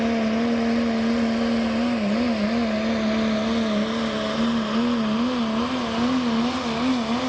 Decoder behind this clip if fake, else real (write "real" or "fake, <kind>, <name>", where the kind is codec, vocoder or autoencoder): real